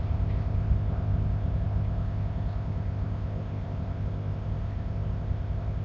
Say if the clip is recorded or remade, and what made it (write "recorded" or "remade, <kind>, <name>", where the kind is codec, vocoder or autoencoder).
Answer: remade, codec, ZipCodec